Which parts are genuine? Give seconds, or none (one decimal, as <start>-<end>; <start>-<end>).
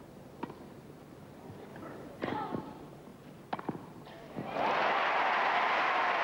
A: 0.0-1.7; 2.3-6.2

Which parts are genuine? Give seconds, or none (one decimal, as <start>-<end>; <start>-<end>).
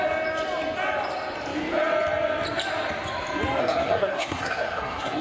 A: 0.0-3.6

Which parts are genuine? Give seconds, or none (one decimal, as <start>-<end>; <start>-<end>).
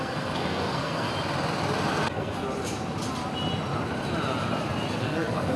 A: 1.1-1.9; 2.4-5.0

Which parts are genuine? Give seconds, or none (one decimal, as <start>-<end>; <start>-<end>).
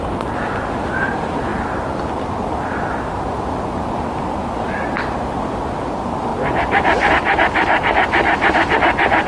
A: 0.0-6.3; 7.1-9.3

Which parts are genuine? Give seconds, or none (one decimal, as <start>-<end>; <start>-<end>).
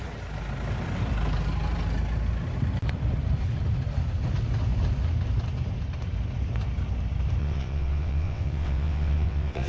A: 0.0-7.4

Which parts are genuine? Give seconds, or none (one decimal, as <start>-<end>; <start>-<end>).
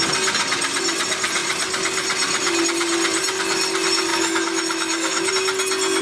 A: 0.0-4.1; 5.3-6.0